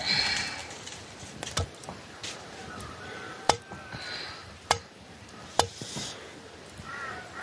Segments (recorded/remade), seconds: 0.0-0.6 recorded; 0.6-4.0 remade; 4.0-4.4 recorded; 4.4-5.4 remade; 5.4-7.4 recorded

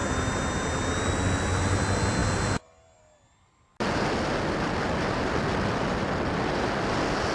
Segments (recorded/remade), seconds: 0.0-7.3 recorded

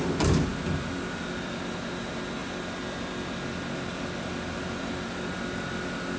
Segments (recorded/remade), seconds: 0.0-6.2 recorded

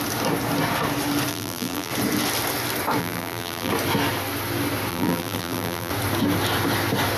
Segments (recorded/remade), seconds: 0.0-1.3 recorded; 1.3-1.9 remade; 1.9-3.0 recorded; 3.0-3.7 remade; 3.7-4.9 recorded; 4.9-5.9 remade; 5.9-7.2 recorded

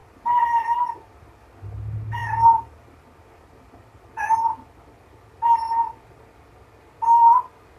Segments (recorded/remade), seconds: 0.0-0.8 remade; 0.8-7.8 recorded

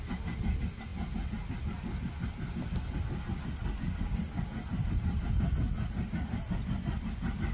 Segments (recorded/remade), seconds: 0.0-7.5 recorded

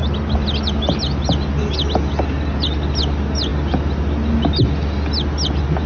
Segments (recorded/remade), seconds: 0.0-5.9 recorded

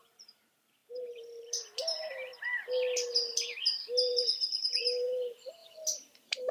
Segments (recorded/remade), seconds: 0.0-2.3 remade; 2.3-4.1 recorded; 4.1-6.5 remade